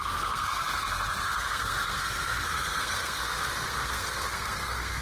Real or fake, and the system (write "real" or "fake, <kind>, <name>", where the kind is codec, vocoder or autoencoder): fake, codec, SNAC